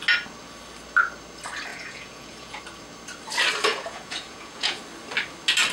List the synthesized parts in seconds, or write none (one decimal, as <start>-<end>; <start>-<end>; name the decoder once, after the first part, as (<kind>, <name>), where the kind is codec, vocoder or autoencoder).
1.7-2.6 (vocoder, Vocos); 3.7-4.8